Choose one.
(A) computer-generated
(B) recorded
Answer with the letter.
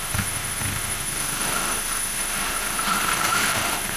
A